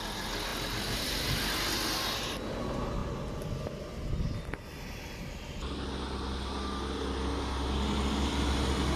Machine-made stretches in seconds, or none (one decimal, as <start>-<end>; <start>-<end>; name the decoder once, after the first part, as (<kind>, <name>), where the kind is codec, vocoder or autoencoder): none